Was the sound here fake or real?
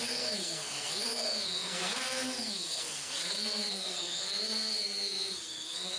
fake